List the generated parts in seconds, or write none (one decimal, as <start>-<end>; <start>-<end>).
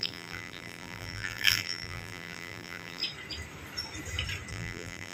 0.0-3.0; 4.5-5.1